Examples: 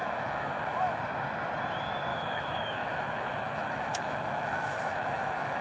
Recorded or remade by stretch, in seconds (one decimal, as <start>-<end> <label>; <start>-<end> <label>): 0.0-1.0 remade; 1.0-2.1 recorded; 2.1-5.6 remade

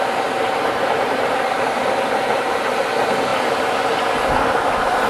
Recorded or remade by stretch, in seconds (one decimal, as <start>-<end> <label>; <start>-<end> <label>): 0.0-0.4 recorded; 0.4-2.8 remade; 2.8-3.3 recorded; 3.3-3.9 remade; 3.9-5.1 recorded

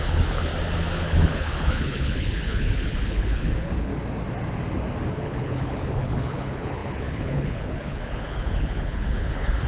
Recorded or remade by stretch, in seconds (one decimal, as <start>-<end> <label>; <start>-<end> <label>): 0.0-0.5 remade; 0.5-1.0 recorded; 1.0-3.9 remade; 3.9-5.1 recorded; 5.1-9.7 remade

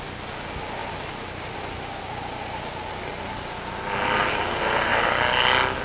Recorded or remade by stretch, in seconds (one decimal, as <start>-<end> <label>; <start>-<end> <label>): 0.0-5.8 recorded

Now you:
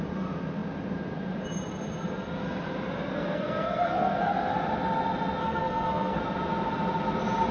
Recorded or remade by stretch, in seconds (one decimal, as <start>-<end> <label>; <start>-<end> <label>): 0.0-3.1 recorded; 3.1-4.3 remade; 4.3-5.4 recorded; 5.4-6.2 remade; 6.2-7.5 recorded

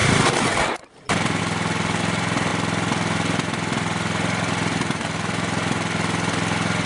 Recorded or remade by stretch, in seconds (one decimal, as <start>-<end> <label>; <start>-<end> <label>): 0.0-1.4 remade; 1.4-6.9 recorded